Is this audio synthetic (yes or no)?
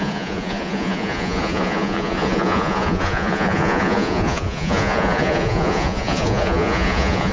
yes